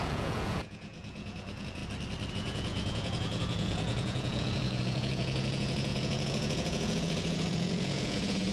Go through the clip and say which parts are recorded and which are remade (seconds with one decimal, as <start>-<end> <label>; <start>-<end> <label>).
0.0-1.8 remade; 1.8-2.3 recorded; 2.3-8.5 remade